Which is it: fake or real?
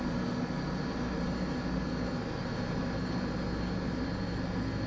real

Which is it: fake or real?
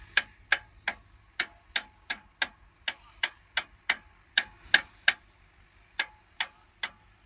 real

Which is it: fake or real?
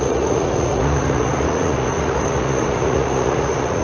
fake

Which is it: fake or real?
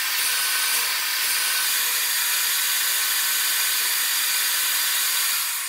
real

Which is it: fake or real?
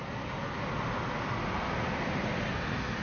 real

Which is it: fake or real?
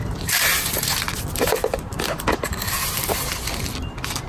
real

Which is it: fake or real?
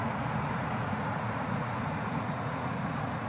fake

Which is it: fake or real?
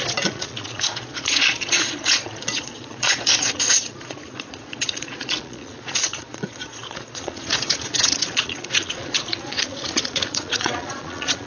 fake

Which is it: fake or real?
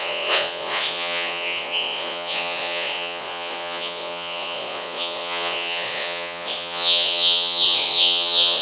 fake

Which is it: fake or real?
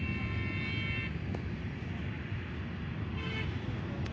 real